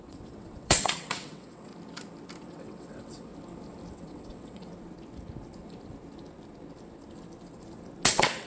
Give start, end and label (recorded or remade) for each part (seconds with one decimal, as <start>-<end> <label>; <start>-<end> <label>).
0.0-1.7 remade; 1.7-2.4 recorded; 2.4-3.3 remade; 3.3-3.9 recorded; 3.9-4.7 remade; 4.7-8.1 recorded; 8.1-8.5 remade